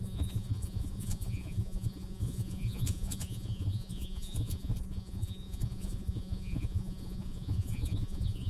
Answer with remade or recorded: remade